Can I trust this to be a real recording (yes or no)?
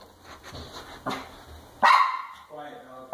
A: yes